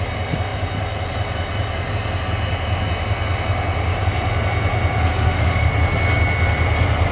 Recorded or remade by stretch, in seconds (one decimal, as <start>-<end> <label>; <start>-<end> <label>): 0.0-5.1 recorded; 5.1-5.7 remade; 5.7-7.1 recorded